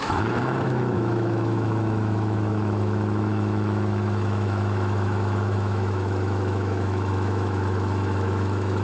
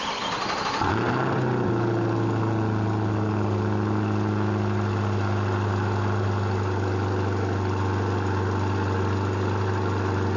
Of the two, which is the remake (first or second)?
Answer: first